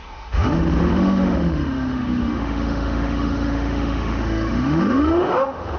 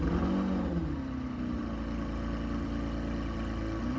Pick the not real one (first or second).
first